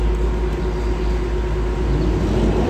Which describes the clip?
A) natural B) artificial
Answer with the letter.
A